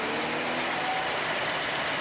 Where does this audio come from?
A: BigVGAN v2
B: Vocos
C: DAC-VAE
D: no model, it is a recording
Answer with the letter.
D